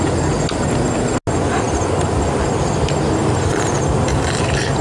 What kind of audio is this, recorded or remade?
recorded